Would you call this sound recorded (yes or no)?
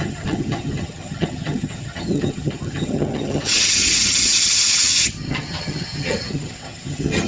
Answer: no